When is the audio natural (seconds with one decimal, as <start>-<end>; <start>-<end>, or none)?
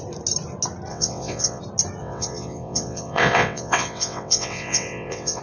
0.0-0.9; 1.6-2.0